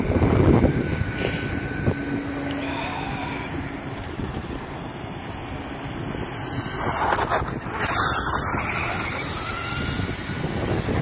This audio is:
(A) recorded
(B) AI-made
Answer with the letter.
A